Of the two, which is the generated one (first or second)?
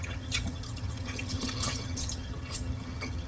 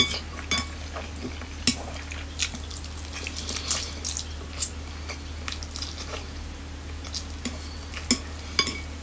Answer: first